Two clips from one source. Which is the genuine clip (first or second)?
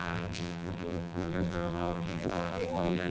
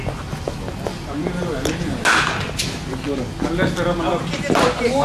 second